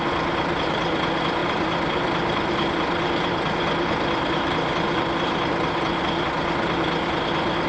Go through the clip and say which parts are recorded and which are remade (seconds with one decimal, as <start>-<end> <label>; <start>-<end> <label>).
0.0-1.4 recorded; 1.4-6.0 remade; 6.0-7.7 recorded